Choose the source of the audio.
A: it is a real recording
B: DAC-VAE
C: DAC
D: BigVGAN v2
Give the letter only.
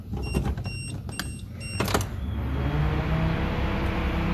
A